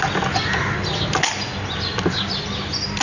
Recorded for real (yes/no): yes